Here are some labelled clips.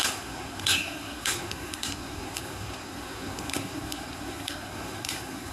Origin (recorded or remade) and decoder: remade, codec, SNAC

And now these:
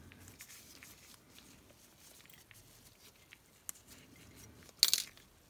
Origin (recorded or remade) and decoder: recorded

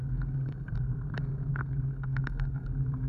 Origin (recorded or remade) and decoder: remade, codec, SNAC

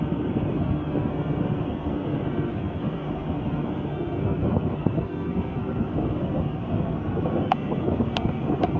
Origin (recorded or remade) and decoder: remade, codec, SNAC